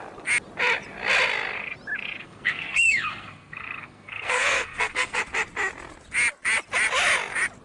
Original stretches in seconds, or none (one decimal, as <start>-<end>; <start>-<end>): 0.0-2.2; 5.2-7.6